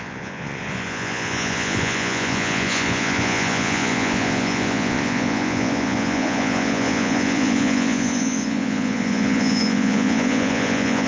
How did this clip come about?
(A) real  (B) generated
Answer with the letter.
B